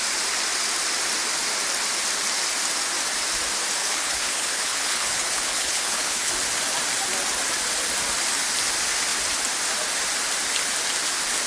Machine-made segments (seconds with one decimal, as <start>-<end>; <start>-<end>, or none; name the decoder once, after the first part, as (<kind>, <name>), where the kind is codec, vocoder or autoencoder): 3.8-6.3 (codec, HILCodec)